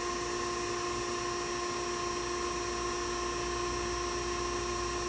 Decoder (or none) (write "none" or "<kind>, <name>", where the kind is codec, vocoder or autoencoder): none